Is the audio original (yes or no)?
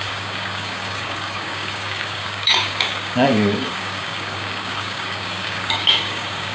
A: no